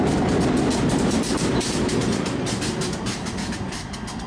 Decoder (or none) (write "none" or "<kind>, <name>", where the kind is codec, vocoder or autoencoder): none